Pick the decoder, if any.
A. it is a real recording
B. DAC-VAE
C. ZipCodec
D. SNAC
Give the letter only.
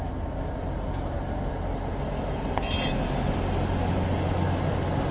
A